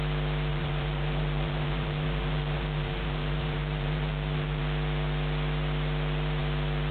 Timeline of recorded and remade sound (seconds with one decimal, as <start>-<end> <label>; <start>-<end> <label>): 0.0-0.5 recorded; 0.5-4.6 remade; 4.6-6.9 recorded